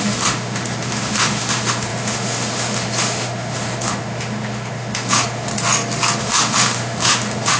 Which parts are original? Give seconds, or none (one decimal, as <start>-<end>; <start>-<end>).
5.5-6.2